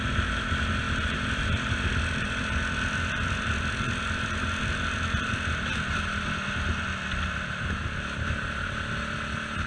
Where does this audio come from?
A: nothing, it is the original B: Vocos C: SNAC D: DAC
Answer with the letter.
A